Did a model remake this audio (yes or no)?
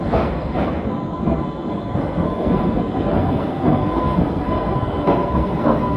yes